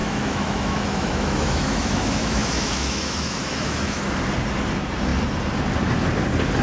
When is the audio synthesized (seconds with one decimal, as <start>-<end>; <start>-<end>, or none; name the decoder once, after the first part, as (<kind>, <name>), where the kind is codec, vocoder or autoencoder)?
0.0-4.0 (autoencoder, DAC-VAE)